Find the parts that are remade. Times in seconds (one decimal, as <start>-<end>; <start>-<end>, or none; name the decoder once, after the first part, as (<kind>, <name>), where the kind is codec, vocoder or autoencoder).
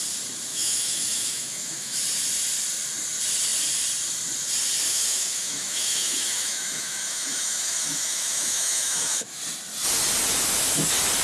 0.5-2.0 (autoencoder, DAC-VAE); 4.9-9.4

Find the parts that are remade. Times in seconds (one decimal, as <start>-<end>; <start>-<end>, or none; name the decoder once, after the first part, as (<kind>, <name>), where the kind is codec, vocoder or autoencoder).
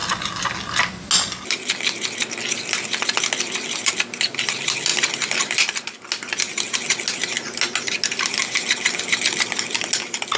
none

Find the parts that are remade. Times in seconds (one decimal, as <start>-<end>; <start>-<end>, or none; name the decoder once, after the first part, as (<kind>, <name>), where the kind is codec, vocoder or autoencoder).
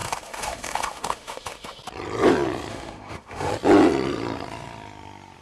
0.0-1.8 (autoencoder, DAC-VAE); 2.7-3.5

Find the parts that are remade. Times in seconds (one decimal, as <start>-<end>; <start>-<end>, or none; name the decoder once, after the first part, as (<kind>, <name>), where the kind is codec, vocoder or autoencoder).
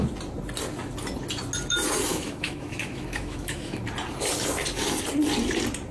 2.1-3.8 (autoencoder, DAC-VAE)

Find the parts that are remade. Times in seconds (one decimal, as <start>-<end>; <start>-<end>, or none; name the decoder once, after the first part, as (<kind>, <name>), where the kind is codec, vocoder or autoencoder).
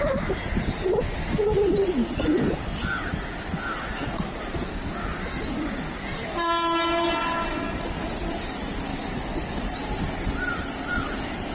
8.9-9.6 (autoencoder, DAC-VAE)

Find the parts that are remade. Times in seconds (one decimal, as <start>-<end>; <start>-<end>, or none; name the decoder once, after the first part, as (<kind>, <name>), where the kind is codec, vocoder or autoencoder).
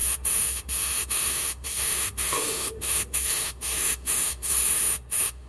0.0-5.5 (autoencoder, DAC-VAE)